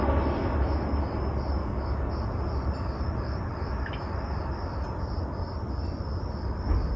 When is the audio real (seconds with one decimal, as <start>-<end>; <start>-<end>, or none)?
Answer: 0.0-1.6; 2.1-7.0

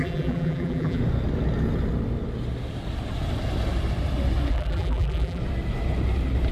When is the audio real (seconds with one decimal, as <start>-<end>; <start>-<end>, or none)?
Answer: 1.0-4.5; 5.4-6.5

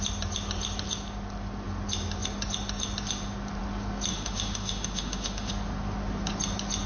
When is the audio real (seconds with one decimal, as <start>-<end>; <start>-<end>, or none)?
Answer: 0.0-4.1; 5.5-6.9